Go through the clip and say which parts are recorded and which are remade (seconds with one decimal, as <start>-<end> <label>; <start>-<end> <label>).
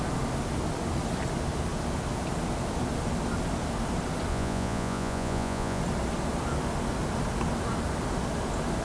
0.0-4.3 recorded; 4.3-5.8 remade; 5.8-8.8 recorded